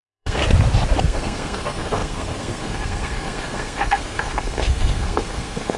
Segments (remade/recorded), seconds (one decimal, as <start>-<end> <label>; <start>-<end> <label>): 0.0-0.4 remade; 0.4-1.0 recorded; 1.0-5.8 remade